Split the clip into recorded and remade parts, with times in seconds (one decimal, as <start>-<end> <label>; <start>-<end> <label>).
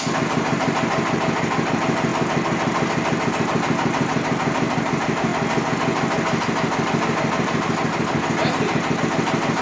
0.0-9.6 recorded